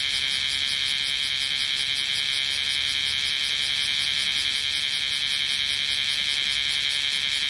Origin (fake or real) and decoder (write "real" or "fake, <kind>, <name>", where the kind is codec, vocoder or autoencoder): real